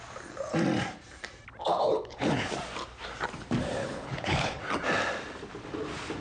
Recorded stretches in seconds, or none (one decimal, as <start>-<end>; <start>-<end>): 0.0-1.7; 2.5-3.8; 4.6-6.2